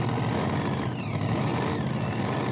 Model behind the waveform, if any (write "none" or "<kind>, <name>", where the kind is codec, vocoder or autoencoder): none